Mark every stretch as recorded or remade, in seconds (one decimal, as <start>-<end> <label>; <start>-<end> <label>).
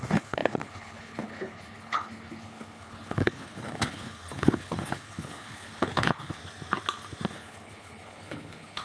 0.0-6.4 remade; 6.4-7.3 recorded; 7.3-8.8 remade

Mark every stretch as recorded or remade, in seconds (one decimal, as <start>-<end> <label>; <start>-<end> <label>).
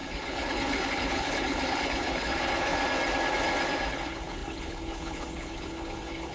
0.0-2.7 remade; 2.7-3.9 recorded; 3.9-6.3 remade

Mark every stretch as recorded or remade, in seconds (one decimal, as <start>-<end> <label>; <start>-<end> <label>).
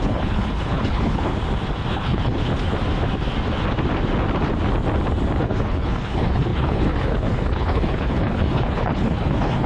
0.0-1.3 remade; 1.3-1.9 recorded; 1.9-2.5 remade; 2.5-5.4 recorded; 5.4-9.7 remade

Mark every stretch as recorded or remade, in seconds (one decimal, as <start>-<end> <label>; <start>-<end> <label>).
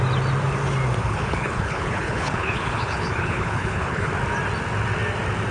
0.0-1.0 recorded; 1.0-4.1 remade; 4.1-5.5 recorded